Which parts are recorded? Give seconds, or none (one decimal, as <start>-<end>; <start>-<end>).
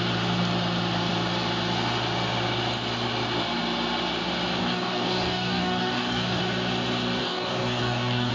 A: 0.0-4.6; 6.4-7.2